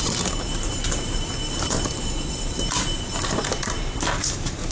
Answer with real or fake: fake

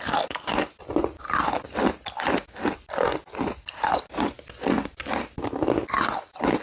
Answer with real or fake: real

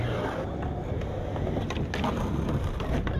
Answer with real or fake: real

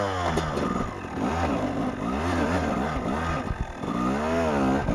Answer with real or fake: real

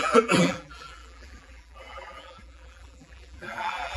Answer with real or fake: fake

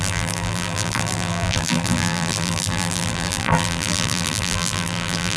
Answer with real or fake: fake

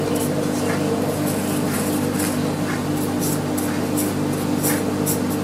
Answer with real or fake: real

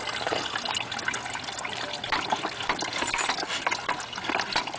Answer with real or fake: real